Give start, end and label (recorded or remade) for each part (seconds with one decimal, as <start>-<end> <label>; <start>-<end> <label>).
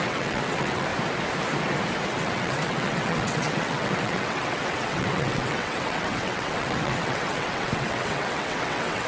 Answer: 0.0-0.9 remade; 0.9-2.2 recorded; 2.2-9.1 remade